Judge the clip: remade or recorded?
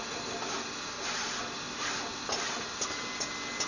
recorded